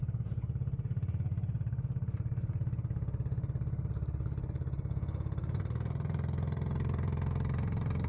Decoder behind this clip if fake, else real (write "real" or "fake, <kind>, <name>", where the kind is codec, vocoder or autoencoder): fake, vocoder, BigVGAN v2